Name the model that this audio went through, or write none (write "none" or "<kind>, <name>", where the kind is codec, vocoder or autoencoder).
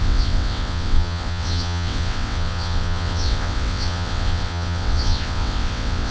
vocoder, WaveNeXt